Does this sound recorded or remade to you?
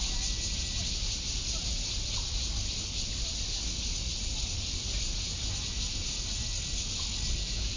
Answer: recorded